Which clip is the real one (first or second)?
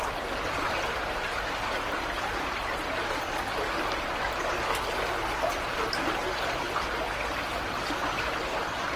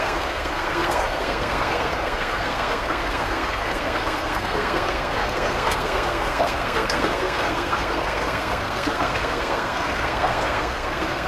first